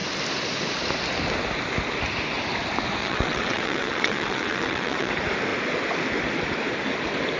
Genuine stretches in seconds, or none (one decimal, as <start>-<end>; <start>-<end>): 0.0-3.0; 5.1-7.4